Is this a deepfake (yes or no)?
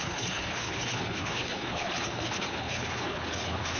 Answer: yes